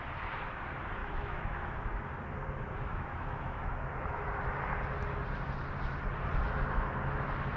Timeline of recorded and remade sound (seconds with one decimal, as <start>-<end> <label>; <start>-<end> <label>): 0.0-1.0 recorded; 1.0-2.0 remade; 2.0-2.9 recorded; 2.9-3.8 remade; 3.8-7.6 recorded